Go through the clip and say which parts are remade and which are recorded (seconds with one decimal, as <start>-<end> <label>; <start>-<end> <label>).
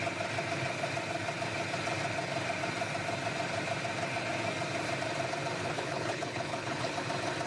0.0-5.6 recorded; 5.6-7.0 remade; 7.0-7.5 recorded